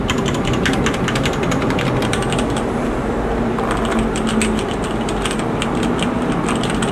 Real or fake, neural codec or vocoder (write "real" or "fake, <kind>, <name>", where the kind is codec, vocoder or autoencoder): real